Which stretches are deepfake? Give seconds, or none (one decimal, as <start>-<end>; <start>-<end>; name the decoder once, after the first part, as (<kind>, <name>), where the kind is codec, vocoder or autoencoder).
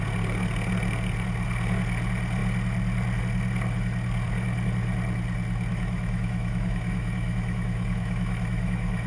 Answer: 5.7-9.1 (autoencoder, DAC-VAE)